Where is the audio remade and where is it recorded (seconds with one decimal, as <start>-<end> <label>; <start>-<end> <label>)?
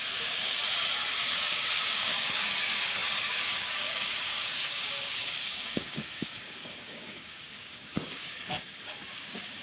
0.0-0.6 remade; 0.6-1.1 recorded; 1.1-9.6 remade